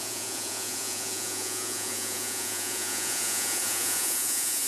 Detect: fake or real fake